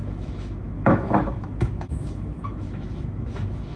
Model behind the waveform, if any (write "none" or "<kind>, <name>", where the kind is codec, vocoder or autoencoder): autoencoder, DAC-VAE